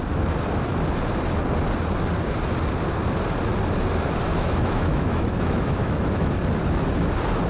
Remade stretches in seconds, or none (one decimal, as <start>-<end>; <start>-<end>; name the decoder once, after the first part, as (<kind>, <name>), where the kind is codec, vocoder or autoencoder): 4.3-6.3 (autoencoder, DAC-VAE)